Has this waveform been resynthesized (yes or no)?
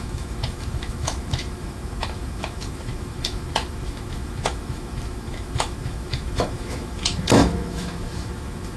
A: yes